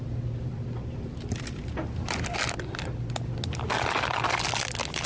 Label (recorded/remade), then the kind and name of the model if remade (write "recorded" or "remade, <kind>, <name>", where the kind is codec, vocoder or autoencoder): recorded